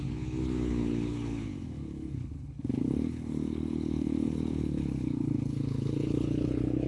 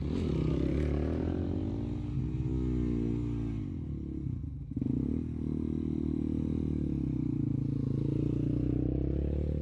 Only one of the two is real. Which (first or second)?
second